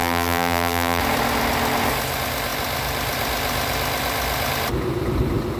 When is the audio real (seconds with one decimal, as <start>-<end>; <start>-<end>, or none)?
1.0-5.6